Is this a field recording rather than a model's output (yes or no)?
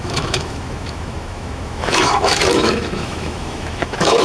no